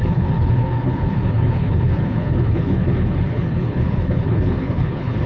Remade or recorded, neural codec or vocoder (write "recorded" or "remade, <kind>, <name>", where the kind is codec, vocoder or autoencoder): remade, codec, HILCodec